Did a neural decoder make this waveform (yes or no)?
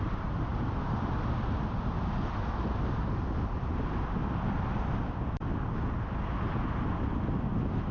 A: no